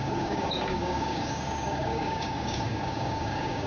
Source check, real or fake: fake